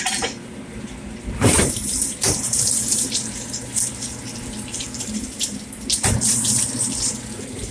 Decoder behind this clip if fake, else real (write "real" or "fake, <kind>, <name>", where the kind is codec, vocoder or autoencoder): fake, vocoder, BigVGAN v2